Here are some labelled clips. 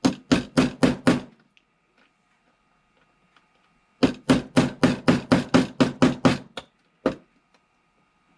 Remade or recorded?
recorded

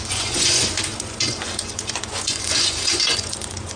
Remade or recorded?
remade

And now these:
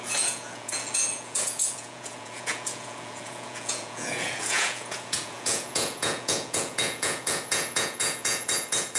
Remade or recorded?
remade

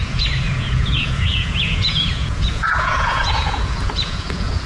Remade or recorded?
remade